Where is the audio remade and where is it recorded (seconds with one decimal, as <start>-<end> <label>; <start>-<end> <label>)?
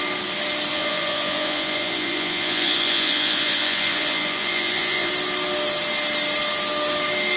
0.0-0.7 recorded; 0.7-5.1 remade; 5.1-7.4 recorded